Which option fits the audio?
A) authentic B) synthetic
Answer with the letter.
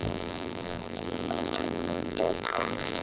B